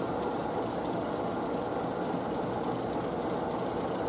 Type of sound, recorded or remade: recorded